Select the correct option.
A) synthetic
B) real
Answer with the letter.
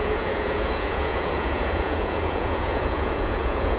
A